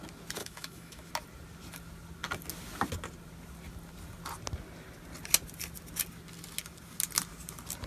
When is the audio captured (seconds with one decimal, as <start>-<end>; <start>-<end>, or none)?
0.0-0.4; 1.1-7.9